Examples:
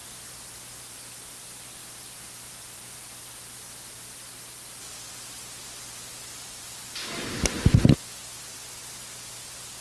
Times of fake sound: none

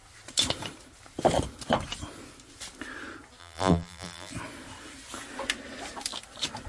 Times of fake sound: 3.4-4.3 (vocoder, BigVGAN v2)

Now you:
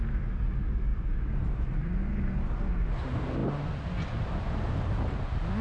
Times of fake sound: none

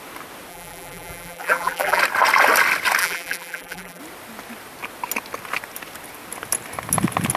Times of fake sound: 0.5-2.0 (vocoder, BigVGAN v2); 3.0-4.0

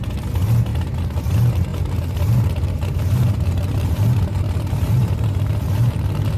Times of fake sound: 1.7-5.5 (vocoder, BigVGAN v2)